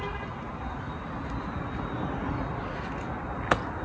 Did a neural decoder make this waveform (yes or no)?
no